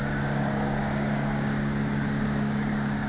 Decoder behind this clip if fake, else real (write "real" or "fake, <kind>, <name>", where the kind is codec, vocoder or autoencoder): fake, codec, DAC